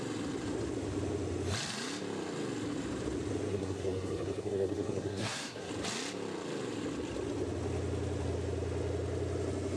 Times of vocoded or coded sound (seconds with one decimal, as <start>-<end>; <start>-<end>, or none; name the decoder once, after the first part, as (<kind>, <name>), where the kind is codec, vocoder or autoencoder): 3.5-5.7 (codec, SNAC)